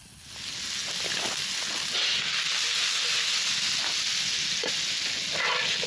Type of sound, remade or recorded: recorded